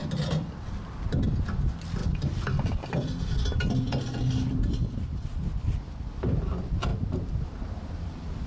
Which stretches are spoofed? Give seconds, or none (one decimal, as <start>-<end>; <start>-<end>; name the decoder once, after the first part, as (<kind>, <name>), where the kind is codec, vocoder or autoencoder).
0.0-0.8 (vocoder, BigVGAN v2); 2.0-4.0